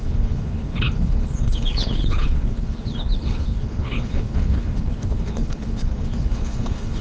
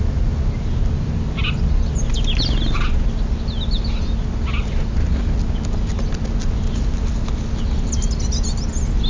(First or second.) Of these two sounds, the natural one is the second